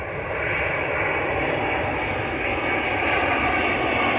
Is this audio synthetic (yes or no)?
no